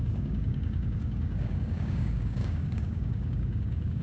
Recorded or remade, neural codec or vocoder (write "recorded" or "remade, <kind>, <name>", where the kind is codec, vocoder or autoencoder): remade, codec, DAC